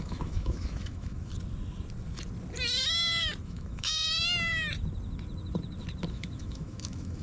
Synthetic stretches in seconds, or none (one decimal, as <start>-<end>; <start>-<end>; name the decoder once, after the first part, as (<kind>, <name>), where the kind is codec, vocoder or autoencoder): 0.0-1.3 (autoencoder, DAC-VAE); 3.4-3.9; 6.1-7.2